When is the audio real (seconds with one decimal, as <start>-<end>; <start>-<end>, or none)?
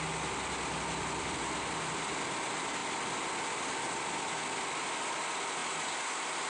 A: 0.0-6.5